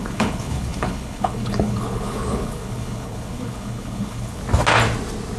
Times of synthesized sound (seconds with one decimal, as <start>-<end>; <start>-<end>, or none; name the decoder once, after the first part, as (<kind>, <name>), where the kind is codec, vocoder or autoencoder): 0.0-4.4 (codec, HILCodec)